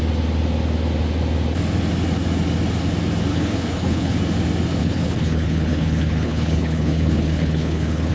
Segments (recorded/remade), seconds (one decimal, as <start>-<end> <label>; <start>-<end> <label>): 0.0-3.3 recorded; 3.3-4.2 remade; 4.2-4.8 recorded; 4.8-8.1 remade